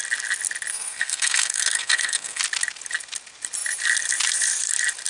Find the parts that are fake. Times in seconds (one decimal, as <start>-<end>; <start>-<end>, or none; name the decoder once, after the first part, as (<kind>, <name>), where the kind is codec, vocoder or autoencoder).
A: 0.7-2.4 (codec, SNAC)